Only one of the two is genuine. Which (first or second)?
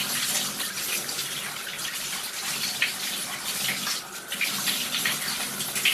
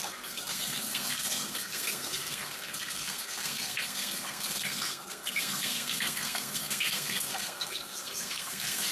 first